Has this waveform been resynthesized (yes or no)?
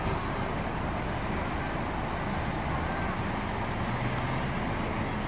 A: no